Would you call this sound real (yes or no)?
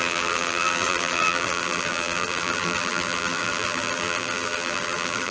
no